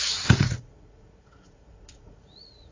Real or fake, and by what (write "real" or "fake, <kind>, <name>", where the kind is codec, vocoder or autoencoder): fake, vocoder, Vocos